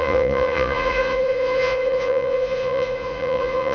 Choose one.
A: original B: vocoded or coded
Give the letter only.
B